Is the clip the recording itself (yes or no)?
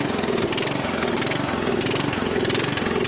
yes